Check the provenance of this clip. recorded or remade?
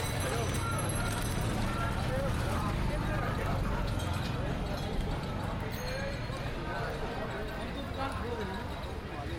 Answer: recorded